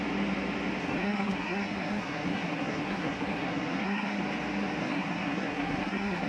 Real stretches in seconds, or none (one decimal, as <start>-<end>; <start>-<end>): 0.0-0.8; 4.2-4.8